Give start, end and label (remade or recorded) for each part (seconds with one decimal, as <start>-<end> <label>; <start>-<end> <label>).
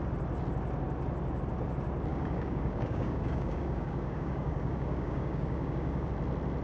0.0-2.1 recorded; 2.1-6.1 remade; 6.1-6.6 recorded